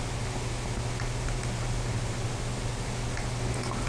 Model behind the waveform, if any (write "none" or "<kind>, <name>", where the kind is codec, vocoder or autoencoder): none